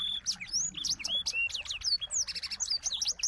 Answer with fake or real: real